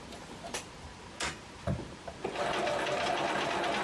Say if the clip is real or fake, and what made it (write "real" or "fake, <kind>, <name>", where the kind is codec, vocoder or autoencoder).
real